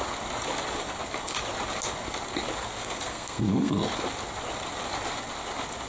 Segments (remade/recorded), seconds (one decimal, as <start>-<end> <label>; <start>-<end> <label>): 0.0-2.8 recorded; 2.8-3.7 remade; 3.7-5.9 recorded